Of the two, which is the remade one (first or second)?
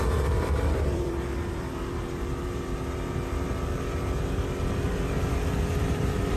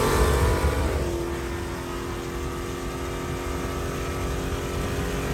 first